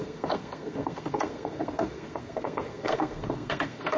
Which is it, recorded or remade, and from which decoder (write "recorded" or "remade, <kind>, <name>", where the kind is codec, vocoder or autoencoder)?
remade, codec, SNAC